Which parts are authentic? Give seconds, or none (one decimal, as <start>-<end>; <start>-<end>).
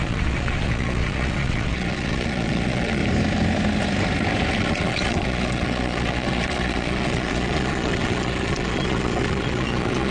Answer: 3.0-4.5